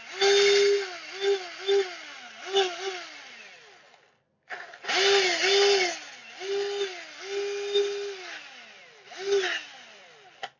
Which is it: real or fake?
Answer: real